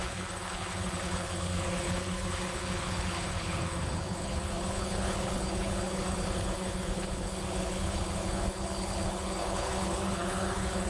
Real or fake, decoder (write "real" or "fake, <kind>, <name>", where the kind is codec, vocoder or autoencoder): fake, codec, HILCodec